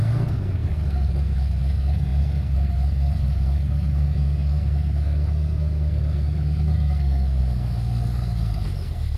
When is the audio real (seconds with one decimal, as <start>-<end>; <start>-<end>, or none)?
none